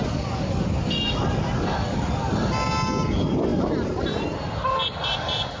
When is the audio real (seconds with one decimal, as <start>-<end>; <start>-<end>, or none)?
0.0-5.6